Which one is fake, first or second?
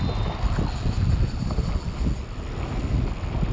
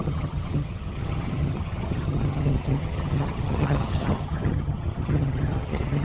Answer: second